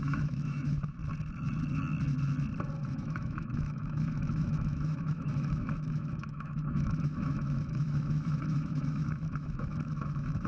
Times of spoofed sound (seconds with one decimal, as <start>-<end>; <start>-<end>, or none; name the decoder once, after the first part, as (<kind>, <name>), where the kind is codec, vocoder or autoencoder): 0.0-1.0 (autoencoder, DAC-VAE); 2.9-10.5